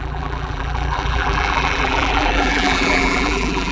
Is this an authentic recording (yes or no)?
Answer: no